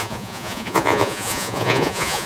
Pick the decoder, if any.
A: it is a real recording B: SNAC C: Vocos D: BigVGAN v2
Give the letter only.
C